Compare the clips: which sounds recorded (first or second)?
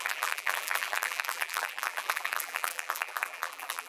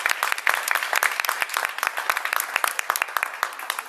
second